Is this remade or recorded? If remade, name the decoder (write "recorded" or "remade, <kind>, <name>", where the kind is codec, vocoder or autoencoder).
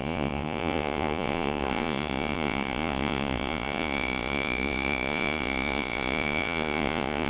remade, vocoder, Vocos